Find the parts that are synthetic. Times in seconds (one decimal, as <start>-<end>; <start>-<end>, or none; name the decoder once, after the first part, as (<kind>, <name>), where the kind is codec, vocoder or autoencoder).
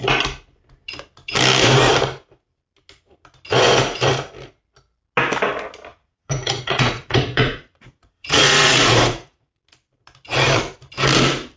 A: 5.9-9.6 (vocoder, Vocos)